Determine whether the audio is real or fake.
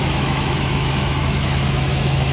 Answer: fake